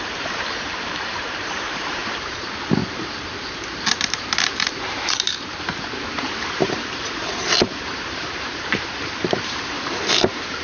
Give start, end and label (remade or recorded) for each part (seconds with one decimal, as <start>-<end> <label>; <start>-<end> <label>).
0.0-10.6 remade